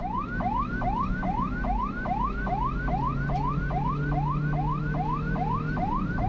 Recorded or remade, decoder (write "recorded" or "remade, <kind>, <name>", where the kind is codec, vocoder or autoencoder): recorded